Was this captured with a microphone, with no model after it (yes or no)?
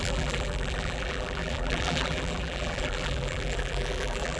no